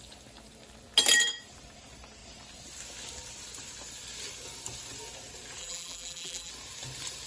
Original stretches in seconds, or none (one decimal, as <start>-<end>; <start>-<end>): 0.0-5.6; 6.5-7.3